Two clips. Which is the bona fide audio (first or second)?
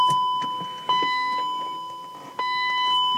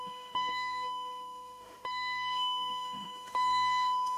first